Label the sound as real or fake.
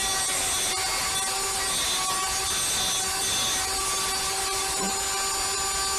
real